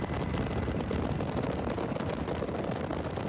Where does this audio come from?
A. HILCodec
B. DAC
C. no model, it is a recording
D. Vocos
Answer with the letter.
C